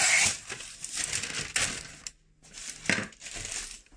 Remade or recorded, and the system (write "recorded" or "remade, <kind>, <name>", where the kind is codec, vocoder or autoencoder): recorded